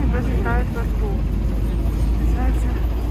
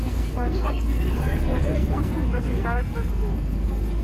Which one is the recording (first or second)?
first